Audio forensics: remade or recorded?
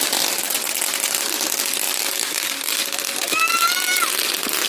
recorded